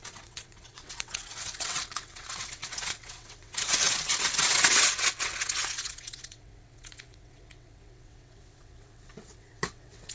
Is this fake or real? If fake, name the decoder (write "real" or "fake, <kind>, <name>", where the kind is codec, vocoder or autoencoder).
fake, vocoder, WaveNeXt